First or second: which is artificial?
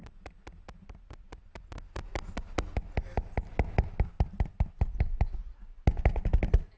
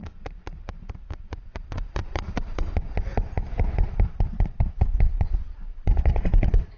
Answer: second